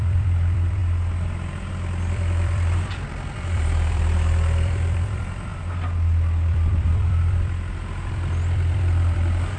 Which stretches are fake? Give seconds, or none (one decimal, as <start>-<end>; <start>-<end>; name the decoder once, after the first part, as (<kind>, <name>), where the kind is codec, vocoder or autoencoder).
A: 0.0-0.8 (vocoder, BigVGAN v2); 1.7-5.5; 6.5-9.6